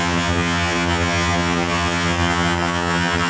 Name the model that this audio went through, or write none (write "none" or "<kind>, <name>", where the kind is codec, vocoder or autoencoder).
vocoder, HiFi-GAN